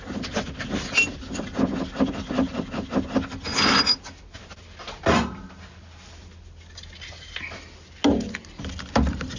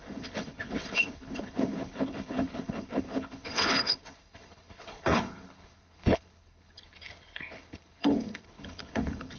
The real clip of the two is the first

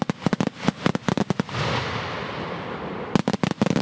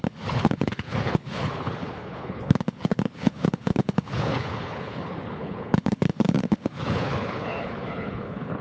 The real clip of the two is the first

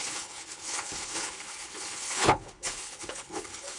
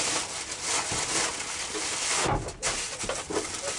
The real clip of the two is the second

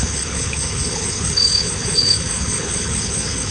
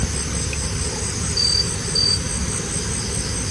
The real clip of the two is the second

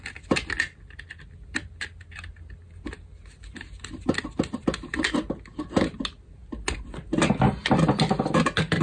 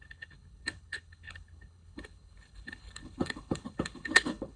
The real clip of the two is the first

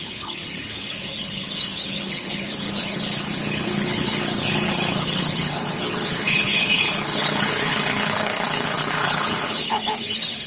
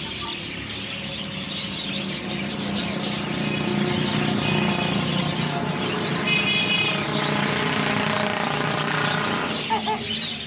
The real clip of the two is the second